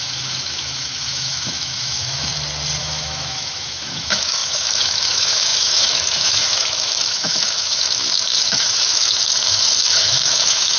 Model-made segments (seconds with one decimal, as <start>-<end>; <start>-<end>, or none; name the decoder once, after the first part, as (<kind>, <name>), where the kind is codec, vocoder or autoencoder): 0.0-2.3 (autoencoder, DAC-VAE); 2.8-10.8